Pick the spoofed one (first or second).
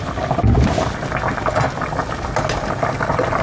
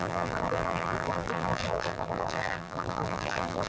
second